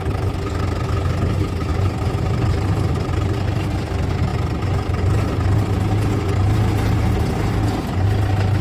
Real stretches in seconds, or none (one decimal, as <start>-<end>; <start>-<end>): 0.0-1.7; 3.4-8.6